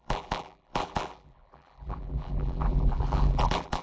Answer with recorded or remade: remade